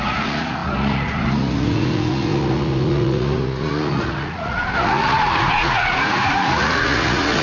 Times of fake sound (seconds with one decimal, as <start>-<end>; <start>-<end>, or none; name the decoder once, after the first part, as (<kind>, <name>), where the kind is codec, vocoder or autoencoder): 0.0-7.4 (vocoder, Vocos)